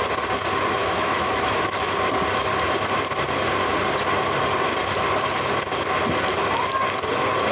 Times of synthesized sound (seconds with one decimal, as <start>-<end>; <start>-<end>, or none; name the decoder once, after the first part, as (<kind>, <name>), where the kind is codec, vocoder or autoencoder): 0.8-1.9 (autoencoder, DAC-VAE)